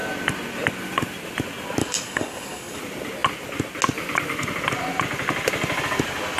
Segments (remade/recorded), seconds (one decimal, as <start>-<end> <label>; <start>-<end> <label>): 0.0-1.8 recorded; 1.8-2.8 remade; 2.8-6.4 recorded